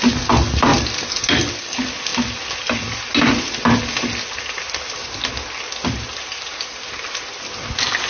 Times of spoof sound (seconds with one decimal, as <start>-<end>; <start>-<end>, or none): none